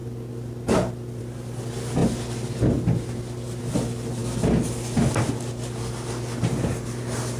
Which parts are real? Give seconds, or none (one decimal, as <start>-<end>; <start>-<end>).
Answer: 0.0-7.4